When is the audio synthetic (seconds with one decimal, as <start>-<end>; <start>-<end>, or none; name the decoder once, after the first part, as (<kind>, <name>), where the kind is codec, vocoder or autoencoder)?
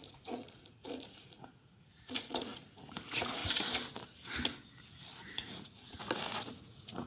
0.0-3.4 (vocoder, Vocos); 4.9-7.1